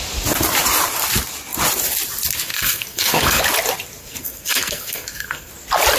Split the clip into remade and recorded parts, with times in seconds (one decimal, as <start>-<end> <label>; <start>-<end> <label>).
0.0-2.5 recorded; 2.5-3.4 remade; 3.4-4.0 recorded; 4.0-5.5 remade; 5.5-6.0 recorded